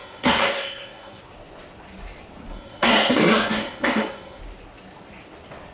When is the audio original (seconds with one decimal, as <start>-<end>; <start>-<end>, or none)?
1.2-2.5; 4.4-5.7